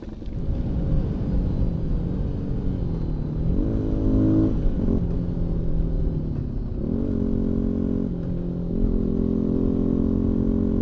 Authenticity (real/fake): real